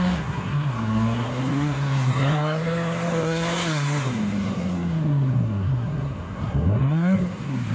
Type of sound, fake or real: fake